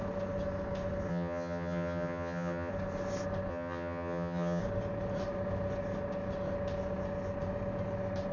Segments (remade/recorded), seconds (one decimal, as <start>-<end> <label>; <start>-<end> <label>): 0.0-1.1 recorded; 1.1-2.7 remade; 2.7-3.5 recorded; 3.5-4.6 remade; 4.6-8.3 recorded